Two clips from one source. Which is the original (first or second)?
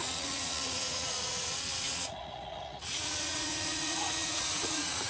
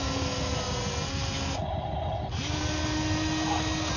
second